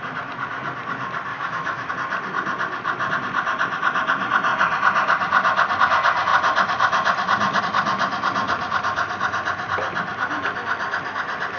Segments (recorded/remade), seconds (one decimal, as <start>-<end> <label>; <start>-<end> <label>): 0.0-1.3 recorded; 1.3-1.9 remade; 1.9-11.6 recorded